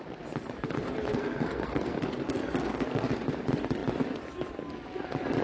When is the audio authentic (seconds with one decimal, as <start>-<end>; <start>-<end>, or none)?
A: 0.0-1.1; 3.1-5.4

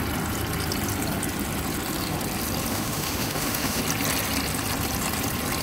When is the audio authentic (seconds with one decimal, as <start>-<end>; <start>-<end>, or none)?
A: 0.0-2.7; 3.8-5.6

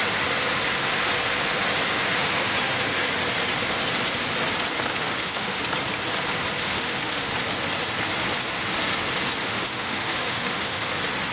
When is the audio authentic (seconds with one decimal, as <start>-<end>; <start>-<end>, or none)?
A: 0.0-4.9; 5.6-6.6; 7.3-9.4; 10.9-11.3

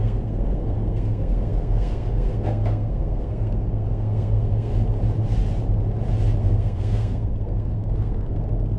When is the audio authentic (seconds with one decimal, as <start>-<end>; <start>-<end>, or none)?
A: 4.7-6.4